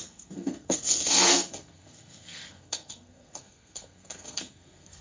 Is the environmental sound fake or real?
fake